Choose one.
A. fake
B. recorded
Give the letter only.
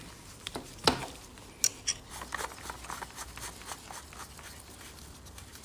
B